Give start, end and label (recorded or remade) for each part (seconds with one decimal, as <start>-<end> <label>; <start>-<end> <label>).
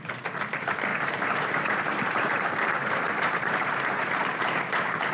0.0-0.9 recorded; 0.9-4.0 remade; 4.0-5.1 recorded